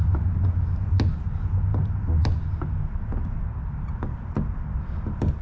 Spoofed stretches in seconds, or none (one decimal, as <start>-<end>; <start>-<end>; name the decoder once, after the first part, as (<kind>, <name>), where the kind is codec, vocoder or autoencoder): none